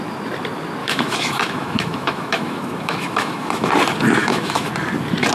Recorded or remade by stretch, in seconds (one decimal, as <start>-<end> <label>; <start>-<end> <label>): 0.0-0.8 recorded; 0.8-3.7 remade; 3.7-4.2 recorded; 4.2-4.7 remade; 4.7-5.3 recorded